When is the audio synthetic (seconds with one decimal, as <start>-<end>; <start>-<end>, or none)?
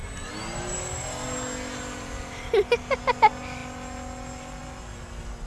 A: none